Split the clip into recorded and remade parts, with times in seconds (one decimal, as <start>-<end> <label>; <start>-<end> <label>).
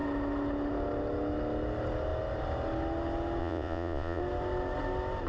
0.0-3.4 recorded; 3.4-4.2 remade; 4.2-5.3 recorded